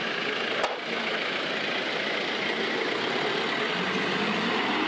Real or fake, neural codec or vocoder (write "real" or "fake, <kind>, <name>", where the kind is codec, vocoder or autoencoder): real